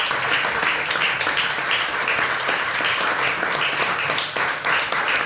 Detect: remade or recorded recorded